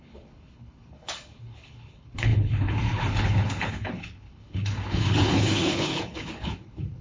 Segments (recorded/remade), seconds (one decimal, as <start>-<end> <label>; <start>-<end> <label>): 0.0-7.0 remade

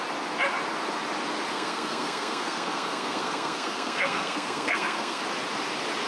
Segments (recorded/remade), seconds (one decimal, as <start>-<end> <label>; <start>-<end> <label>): 0.0-1.5 recorded; 1.5-5.2 remade; 5.2-6.1 recorded

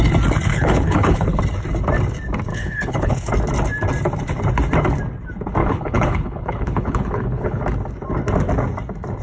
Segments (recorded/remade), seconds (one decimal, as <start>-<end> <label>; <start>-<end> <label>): 0.0-0.5 recorded; 0.5-1.4 remade; 1.4-2.5 recorded; 2.5-3.3 remade; 3.3-5.6 recorded; 5.6-7.6 remade; 7.6-9.2 recorded

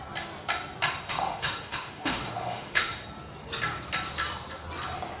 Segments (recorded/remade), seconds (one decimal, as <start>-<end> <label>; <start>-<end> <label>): 0.0-1.1 recorded; 1.1-3.0 remade; 3.0-5.2 recorded

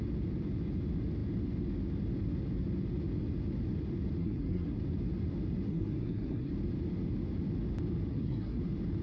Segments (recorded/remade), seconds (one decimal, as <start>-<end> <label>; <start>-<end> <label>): 0.0-4.2 recorded; 4.2-4.8 remade; 4.8-5.7 recorded; 5.7-6.5 remade; 6.5-8.1 recorded; 8.1-8.6 remade; 8.6-9.0 recorded

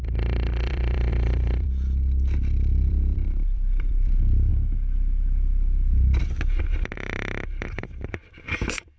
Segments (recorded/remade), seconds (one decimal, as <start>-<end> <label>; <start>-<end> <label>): 0.0-4.5 remade; 4.5-6.6 recorded; 6.6-9.0 remade

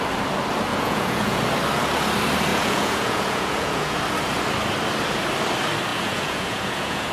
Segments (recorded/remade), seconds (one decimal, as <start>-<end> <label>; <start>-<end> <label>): 0.0-0.7 recorded; 0.7-1.4 remade; 1.4-2.5 recorded; 2.5-4.0 remade; 4.0-5.9 recorded; 5.9-7.1 remade